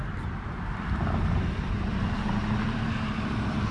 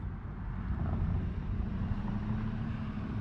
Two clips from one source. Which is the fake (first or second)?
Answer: first